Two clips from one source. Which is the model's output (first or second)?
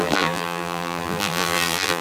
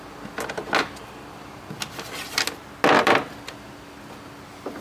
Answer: first